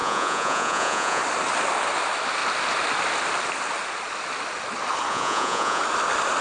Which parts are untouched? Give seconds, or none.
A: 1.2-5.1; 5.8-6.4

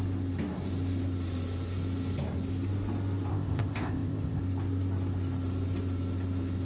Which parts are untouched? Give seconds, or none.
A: 0.0-3.3; 4.4-6.7

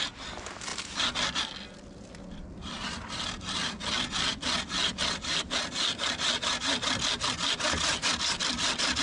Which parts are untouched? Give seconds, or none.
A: 0.0-9.0

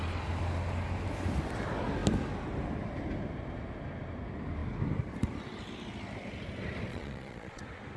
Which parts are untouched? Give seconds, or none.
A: 0.0-6.9; 7.6-8.0

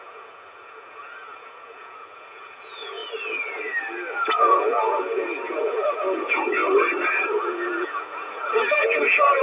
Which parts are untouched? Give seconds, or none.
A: 3.0-4.1; 6.6-7.4